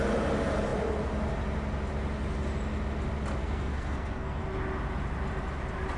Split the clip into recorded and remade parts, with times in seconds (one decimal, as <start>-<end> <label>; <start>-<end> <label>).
0.0-3.4 recorded; 3.4-4.4 remade; 4.4-6.0 recorded